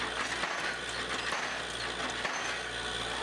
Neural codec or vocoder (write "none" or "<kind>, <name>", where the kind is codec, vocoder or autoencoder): none